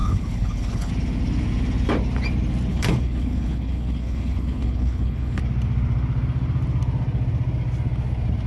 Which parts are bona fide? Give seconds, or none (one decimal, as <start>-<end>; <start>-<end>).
0.9-2.7; 5.4-8.5